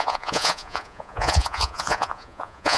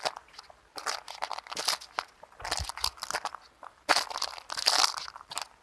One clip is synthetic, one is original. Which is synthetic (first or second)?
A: first